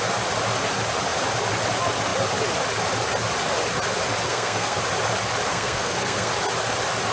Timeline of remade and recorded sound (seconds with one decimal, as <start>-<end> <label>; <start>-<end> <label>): 0.0-4.3 recorded; 4.3-4.8 remade; 4.8-5.5 recorded; 5.5-6.3 remade; 6.3-7.1 recorded